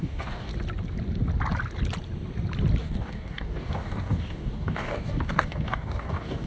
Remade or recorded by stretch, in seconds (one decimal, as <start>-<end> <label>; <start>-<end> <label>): 0.0-0.5 remade; 0.5-2.8 recorded; 2.8-6.5 remade

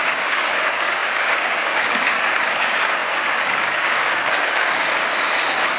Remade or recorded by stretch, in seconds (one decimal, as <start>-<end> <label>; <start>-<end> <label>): 0.0-5.8 remade